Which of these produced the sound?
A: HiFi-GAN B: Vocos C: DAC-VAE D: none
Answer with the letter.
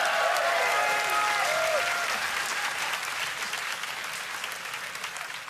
D